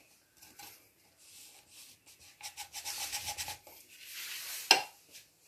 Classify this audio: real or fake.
real